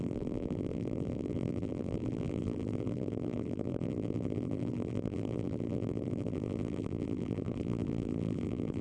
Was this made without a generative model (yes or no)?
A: no